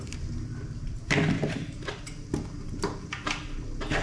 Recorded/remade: recorded